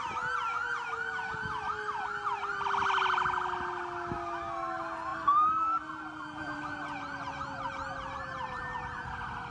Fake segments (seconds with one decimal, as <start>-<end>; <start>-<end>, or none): 5.1-8.6